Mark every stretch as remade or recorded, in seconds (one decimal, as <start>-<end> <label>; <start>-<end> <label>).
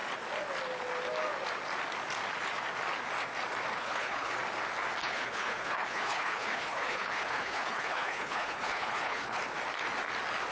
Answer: 0.0-3.7 recorded; 3.7-4.3 remade; 4.3-5.0 recorded; 5.0-9.4 remade; 9.4-10.5 recorded